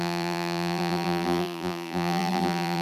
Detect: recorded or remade remade